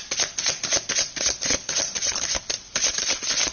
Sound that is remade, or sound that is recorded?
recorded